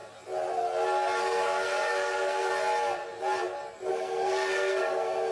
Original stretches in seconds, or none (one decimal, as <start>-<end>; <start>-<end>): 0.0-1.2; 2.5-3.9